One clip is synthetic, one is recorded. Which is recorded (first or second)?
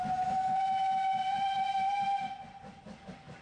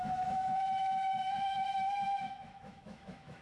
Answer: first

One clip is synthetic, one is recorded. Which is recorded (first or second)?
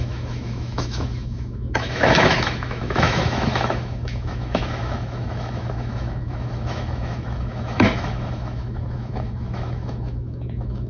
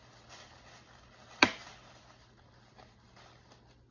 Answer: second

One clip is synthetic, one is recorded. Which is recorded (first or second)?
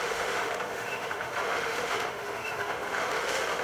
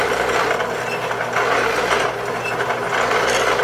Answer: second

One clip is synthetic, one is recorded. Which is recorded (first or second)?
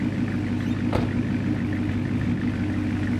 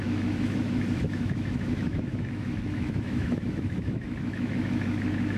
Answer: first